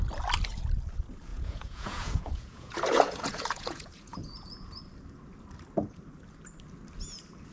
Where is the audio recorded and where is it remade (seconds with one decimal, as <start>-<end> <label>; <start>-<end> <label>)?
0.0-1.3 recorded; 1.3-4.8 remade; 4.8-7.5 recorded